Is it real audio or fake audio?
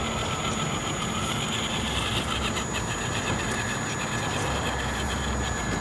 real